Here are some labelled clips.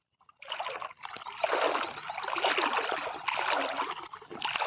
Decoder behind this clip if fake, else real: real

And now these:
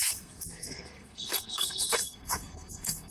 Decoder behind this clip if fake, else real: fake, codec, SNAC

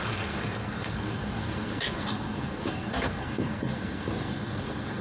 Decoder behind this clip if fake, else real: fake, codec, SNAC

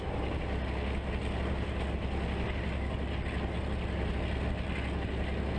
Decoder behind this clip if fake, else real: real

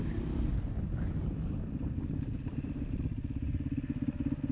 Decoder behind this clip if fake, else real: real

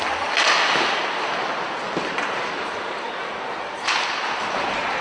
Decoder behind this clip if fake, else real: real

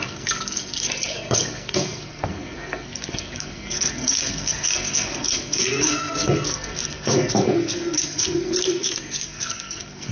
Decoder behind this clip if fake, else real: fake, codec, SNAC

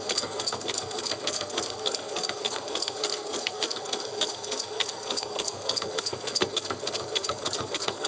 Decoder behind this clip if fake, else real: fake, codec, SNAC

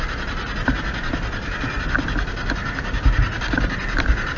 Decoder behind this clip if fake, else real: real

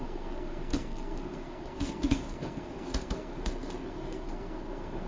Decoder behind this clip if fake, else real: fake, codec, SNAC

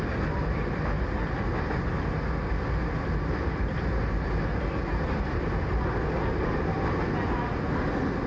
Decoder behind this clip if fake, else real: real